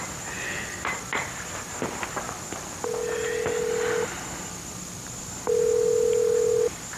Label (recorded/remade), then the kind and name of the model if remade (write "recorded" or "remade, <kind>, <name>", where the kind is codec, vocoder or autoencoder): recorded